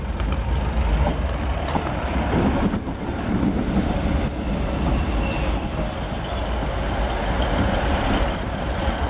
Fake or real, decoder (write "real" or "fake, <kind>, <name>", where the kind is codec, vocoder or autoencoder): real